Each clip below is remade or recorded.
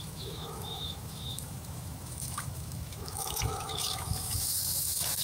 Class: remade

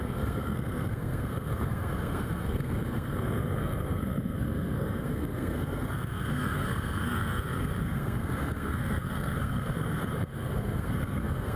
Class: remade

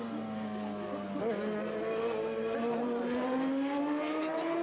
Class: recorded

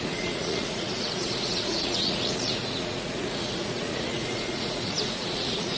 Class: remade